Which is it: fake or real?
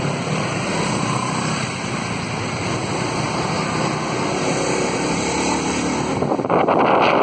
real